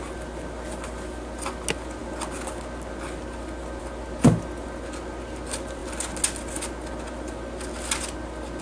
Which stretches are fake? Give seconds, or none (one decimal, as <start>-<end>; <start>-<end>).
none